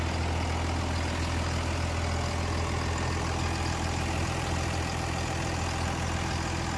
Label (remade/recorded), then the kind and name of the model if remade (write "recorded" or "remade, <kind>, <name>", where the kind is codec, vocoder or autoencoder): recorded